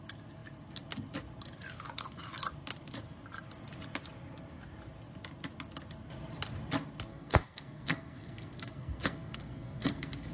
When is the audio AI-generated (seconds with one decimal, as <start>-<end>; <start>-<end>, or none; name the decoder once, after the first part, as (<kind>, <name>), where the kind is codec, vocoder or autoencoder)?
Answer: 7.1-10.3 (codec, SNAC)